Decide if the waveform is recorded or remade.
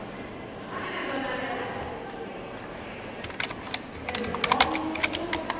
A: recorded